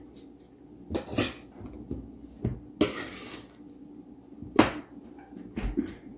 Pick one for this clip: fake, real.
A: real